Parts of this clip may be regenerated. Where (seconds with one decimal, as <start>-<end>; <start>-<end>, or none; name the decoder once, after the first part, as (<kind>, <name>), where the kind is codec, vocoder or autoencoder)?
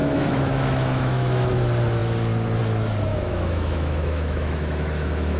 0.0-1.5 (autoencoder, DAC-VAE); 3.1-5.4